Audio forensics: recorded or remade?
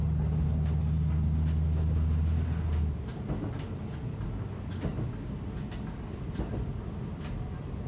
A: recorded